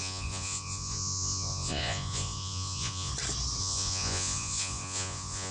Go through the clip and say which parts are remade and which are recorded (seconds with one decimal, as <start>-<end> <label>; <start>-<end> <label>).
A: 0.0-3.1 remade; 3.1-3.6 recorded; 3.6-5.5 remade